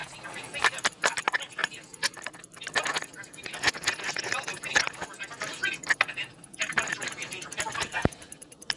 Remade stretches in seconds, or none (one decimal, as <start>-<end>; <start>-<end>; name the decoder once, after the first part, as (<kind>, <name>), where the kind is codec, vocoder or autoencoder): none